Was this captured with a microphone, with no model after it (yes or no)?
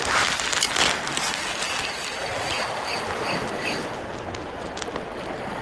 yes